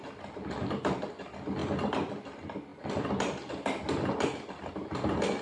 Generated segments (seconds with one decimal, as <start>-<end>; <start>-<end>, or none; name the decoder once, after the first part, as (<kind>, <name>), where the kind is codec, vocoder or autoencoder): none